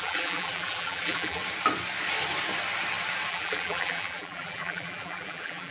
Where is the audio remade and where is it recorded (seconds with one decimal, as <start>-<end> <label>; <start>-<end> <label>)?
0.0-1.4 remade; 1.4-3.3 recorded; 3.3-5.7 remade